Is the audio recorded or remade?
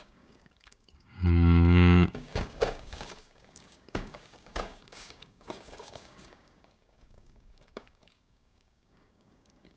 remade